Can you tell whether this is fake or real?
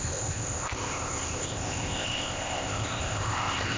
fake